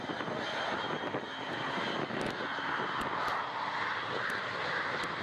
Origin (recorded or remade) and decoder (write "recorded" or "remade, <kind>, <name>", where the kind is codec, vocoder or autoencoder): recorded